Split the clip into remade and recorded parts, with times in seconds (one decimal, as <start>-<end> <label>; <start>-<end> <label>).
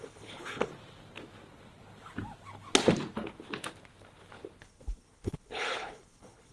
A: 0.0-0.7 remade; 0.7-4.6 recorded; 4.6-6.5 remade